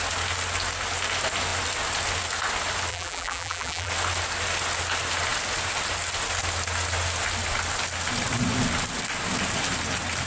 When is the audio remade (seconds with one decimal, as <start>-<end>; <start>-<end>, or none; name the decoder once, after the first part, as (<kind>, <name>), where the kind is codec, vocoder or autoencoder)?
2.9-3.9 (vocoder, BigVGAN v2)

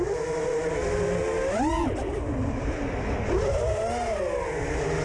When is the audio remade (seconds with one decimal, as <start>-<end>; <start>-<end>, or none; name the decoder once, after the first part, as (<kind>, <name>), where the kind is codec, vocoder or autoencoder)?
none

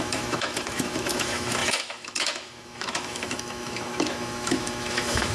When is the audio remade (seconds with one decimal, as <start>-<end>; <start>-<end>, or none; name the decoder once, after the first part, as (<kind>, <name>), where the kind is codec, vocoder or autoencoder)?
0.0-5.3 (autoencoder, DAC-VAE)

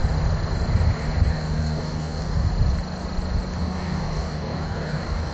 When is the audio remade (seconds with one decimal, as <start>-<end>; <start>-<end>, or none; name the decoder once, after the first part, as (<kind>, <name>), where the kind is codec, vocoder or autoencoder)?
1.3-2.5 (codec, DAC); 3.6-5.3

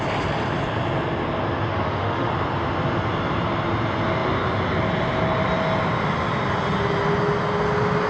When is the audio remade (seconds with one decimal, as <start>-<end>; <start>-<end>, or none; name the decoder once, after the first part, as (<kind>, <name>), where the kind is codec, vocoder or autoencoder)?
1.7-2.3 (autoencoder, DAC-VAE)